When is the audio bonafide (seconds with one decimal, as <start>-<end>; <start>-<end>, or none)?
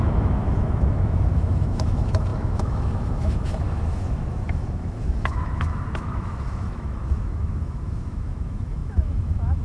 none